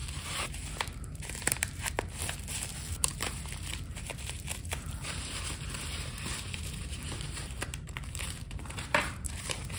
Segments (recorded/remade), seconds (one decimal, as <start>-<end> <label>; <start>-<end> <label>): 0.0-2.2 remade; 2.2-2.7 recorded; 2.7-9.8 remade